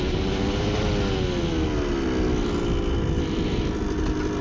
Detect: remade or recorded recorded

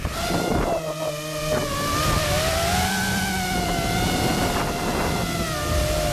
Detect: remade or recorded recorded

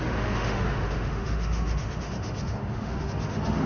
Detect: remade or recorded remade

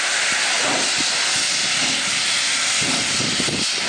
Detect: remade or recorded recorded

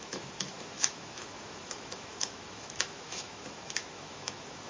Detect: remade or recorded remade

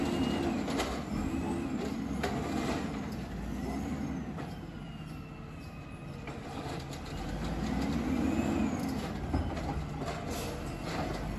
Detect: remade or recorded recorded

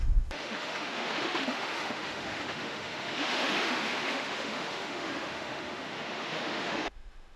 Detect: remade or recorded remade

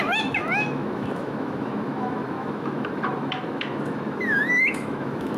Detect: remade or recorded remade